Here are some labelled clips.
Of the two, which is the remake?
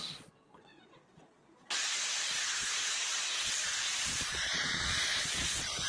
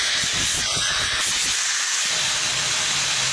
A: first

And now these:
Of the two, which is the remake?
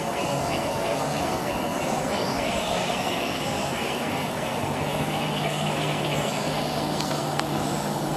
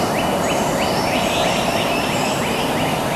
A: first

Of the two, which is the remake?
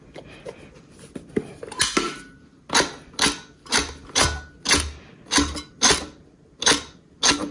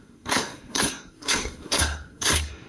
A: second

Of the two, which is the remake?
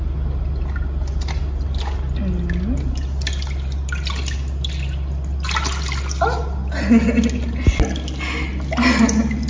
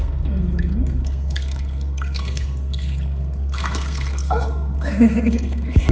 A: second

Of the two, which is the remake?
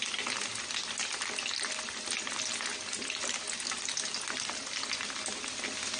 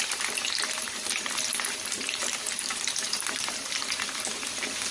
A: second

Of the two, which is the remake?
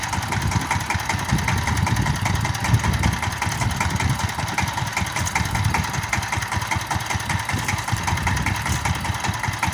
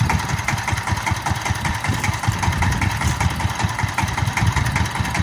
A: second